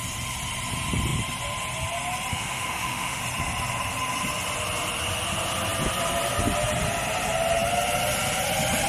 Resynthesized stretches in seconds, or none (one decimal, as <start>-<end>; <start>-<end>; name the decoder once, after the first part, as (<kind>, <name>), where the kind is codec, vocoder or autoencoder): 2.3-3.2 (autoencoder, DAC-VAE)